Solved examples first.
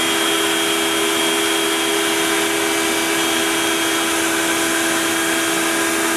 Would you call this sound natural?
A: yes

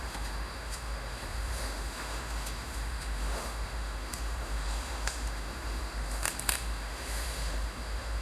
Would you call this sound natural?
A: no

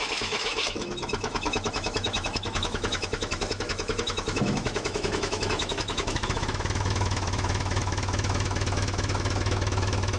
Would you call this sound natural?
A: no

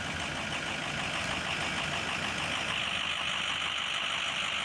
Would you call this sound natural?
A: yes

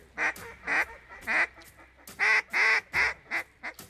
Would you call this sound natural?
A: yes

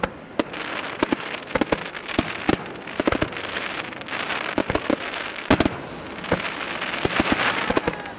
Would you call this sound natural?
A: yes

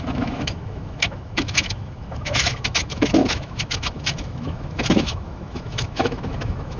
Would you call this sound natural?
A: no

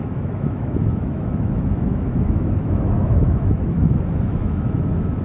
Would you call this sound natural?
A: no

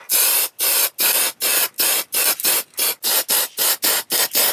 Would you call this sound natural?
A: yes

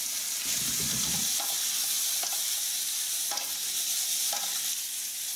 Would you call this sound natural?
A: yes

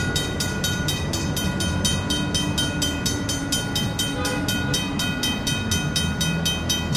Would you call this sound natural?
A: yes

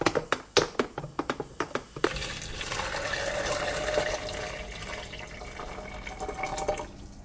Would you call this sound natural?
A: yes